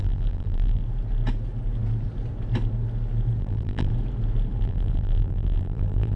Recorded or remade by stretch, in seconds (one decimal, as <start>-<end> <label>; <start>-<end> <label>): 0.0-0.8 remade; 0.8-3.4 recorded; 3.4-3.9 remade; 3.9-4.6 recorded; 4.6-6.2 remade